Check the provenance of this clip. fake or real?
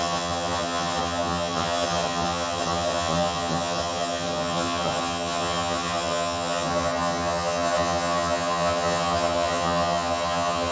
fake